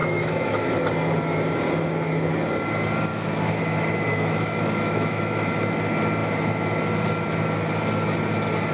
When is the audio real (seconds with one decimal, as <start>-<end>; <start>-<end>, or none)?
0.7-3.1; 3.6-4.1; 5.5-8.7

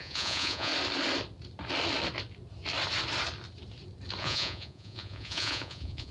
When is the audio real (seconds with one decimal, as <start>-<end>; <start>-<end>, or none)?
0.7-4.2

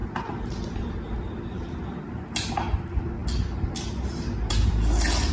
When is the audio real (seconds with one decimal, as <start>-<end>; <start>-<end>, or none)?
0.0-5.3

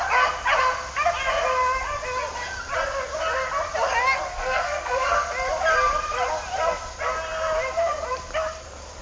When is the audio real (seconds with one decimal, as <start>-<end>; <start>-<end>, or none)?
0.0-4.3; 5.3-9.0

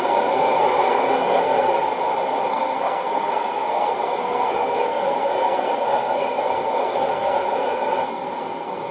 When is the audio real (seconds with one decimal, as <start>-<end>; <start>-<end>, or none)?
1.9-2.5

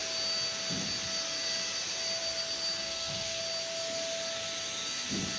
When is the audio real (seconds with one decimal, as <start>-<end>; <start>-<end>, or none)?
0.0-2.8; 3.4-5.4

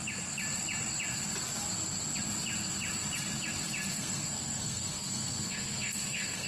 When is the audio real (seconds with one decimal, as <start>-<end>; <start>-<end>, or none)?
0.0-3.9

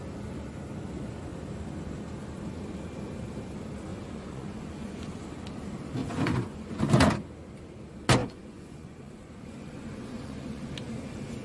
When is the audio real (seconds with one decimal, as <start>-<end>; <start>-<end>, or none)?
0.0-3.9; 5.1-6.0; 6.8-8.2; 10.7-11.4